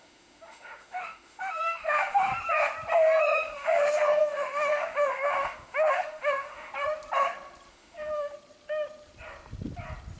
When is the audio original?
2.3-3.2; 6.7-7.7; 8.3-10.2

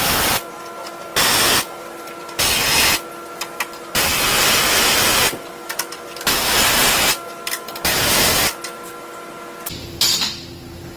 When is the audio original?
0.0-11.0

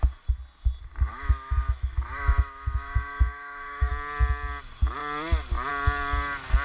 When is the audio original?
0.0-1.1; 3.9-6.6

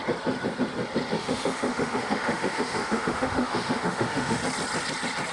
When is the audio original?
0.0-1.2; 4.4-5.3

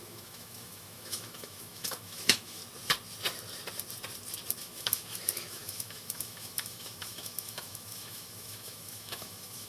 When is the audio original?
2.6-4.6

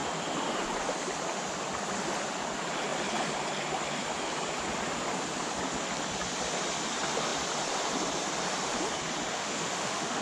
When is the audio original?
0.0-9.3

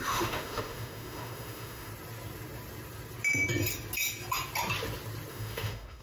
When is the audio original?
1.9-5.3

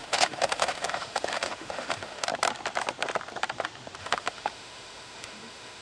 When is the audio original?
2.3-4.0